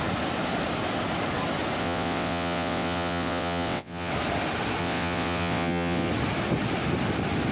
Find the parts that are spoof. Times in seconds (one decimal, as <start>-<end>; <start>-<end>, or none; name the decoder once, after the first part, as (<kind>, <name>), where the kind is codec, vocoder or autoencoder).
1.8-4.1 (vocoder, WaveNeXt); 4.8-6.1